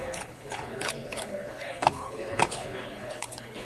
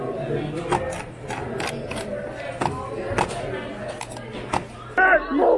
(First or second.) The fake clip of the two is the first